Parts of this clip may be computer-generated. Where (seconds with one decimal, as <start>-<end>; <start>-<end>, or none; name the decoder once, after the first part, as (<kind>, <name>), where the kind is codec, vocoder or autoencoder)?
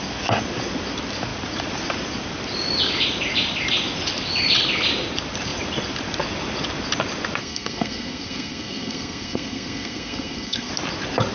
7.4-10.7 (codec, SNAC)